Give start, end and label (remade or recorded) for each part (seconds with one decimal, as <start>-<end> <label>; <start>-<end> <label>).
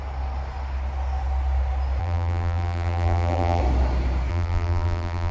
0.0-2.0 recorded; 2.0-3.6 remade; 3.6-4.3 recorded; 4.3-5.3 remade